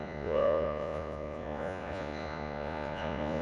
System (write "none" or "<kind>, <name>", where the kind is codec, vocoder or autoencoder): vocoder, Vocos